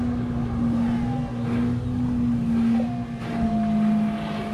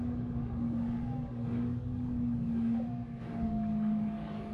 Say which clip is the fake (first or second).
second